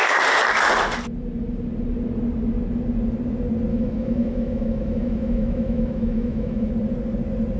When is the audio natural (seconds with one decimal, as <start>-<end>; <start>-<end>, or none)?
0.0-3.7; 6.7-7.6